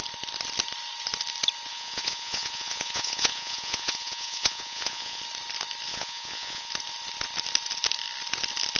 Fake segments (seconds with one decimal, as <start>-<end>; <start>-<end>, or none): 1.7-5.2; 5.9-6.7